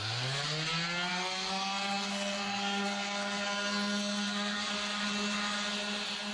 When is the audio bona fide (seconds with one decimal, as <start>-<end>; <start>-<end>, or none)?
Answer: 0.0-1.1; 4.7-6.3

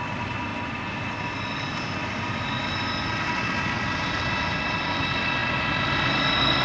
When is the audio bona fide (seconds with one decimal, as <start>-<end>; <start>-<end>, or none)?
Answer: 0.0-6.6

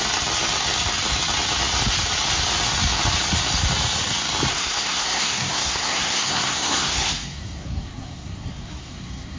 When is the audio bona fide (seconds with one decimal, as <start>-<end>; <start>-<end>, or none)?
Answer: 0.0-4.5

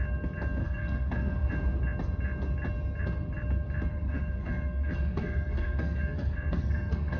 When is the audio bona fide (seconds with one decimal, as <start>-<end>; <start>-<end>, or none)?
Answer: 0.0-0.6; 1.5-3.9

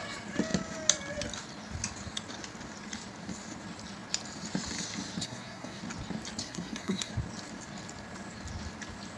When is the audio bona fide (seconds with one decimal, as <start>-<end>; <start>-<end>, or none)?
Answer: 0.0-5.2; 5.8-6.4; 7.1-9.2

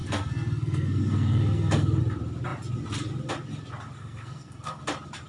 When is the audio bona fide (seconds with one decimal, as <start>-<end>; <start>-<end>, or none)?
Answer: 2.0-4.0; 4.8-5.3

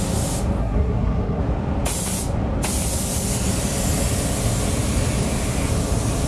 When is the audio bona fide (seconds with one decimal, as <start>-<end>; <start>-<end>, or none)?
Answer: 0.0-0.6; 1.4-6.3